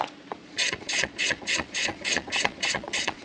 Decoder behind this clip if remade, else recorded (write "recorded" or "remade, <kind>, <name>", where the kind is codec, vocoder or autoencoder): remade, vocoder, Vocos